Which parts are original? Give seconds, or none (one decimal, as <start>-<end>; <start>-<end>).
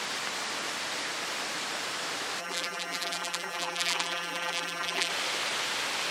0.0-2.4; 5.1-6.1